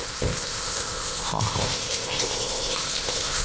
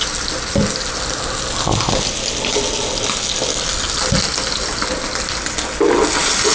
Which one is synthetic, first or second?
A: first